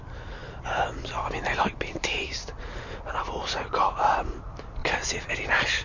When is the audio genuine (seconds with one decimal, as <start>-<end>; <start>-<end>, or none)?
0.0-4.8; 5.3-5.8